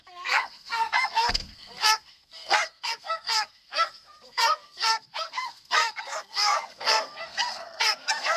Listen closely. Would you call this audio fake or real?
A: fake